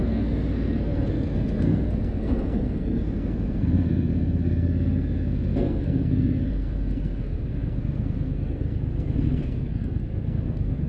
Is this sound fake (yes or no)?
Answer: yes